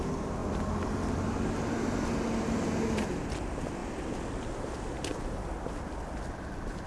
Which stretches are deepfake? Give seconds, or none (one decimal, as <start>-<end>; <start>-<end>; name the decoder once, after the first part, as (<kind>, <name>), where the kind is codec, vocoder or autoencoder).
0.4-1.3 (vocoder, BigVGAN v2); 3.8-5.9